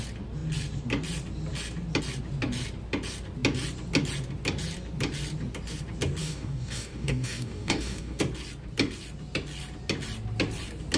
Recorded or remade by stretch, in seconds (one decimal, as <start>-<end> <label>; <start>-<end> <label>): 0.0-6.2 recorded; 6.2-8.2 remade; 8.2-11.0 recorded